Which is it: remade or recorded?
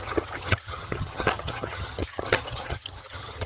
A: remade